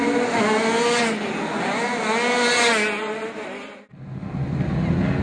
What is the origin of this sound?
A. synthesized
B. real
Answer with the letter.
B